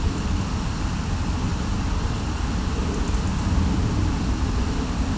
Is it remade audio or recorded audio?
recorded